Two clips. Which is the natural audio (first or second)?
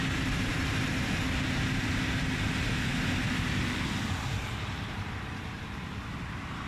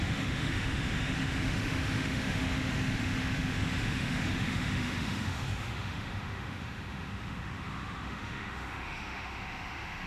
first